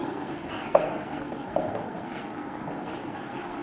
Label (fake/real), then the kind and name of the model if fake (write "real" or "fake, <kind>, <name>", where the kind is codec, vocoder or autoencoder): fake, codec, SNAC